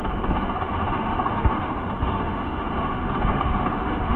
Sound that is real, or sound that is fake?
fake